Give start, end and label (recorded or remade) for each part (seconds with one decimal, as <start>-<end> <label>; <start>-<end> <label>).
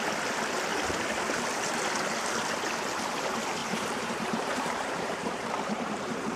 0.0-3.6 recorded; 3.6-6.4 remade